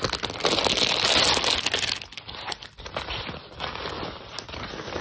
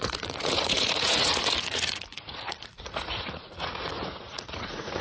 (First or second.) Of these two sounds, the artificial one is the second